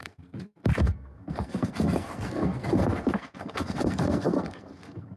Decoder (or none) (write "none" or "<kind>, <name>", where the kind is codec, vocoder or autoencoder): codec, SNAC